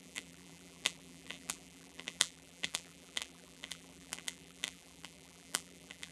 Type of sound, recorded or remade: remade